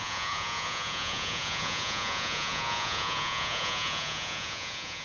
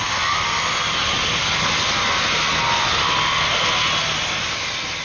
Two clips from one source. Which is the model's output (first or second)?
first